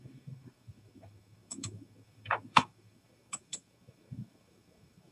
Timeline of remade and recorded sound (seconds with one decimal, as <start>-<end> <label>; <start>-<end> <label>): 0.0-5.1 remade